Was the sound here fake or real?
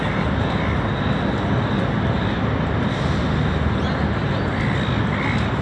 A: real